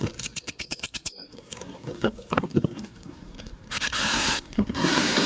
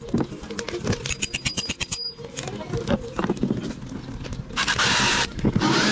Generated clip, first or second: first